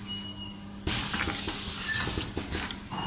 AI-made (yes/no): no